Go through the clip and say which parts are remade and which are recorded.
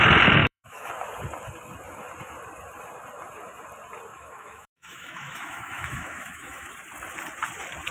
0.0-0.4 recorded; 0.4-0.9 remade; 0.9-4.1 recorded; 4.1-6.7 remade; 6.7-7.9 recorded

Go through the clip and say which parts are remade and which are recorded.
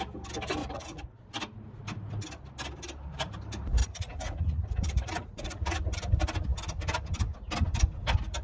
0.0-0.6 recorded; 0.6-1.1 remade; 1.1-3.8 recorded; 3.8-5.8 remade; 5.8-8.4 recorded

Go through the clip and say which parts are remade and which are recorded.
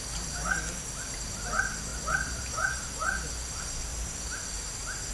0.0-5.1 recorded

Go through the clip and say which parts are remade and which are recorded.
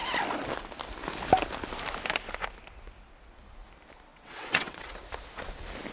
0.0-4.1 recorded; 4.1-4.9 remade; 4.9-5.9 recorded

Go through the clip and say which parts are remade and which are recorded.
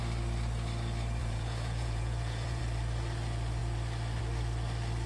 0.0-1.2 recorded; 1.2-2.6 remade; 2.6-5.1 recorded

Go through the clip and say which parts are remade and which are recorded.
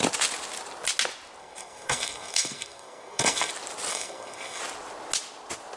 0.0-1.4 recorded; 1.4-3.5 remade; 3.5-3.9 recorded; 3.9-4.6 remade; 4.6-5.8 recorded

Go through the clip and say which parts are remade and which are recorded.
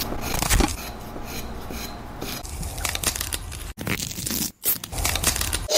0.0-5.8 recorded